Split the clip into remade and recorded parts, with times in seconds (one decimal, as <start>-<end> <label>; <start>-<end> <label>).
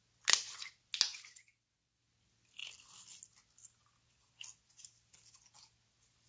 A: 0.0-6.3 recorded